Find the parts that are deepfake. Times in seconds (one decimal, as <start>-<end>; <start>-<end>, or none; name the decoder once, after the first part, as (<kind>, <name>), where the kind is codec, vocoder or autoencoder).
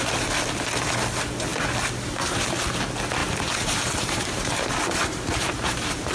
3.2-6.1 (vocoder, BigVGAN v2)